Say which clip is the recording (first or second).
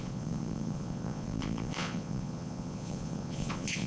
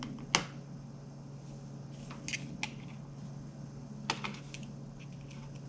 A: second